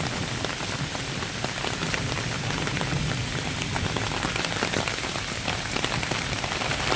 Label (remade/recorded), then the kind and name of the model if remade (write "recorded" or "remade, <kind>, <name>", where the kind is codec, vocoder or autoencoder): recorded